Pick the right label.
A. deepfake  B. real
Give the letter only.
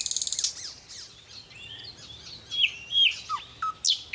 B